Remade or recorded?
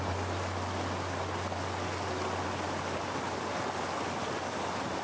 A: recorded